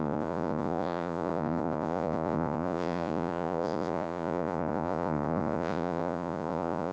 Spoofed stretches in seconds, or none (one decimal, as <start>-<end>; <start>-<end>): 0.0-6.9